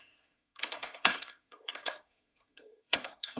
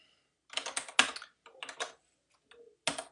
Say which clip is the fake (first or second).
first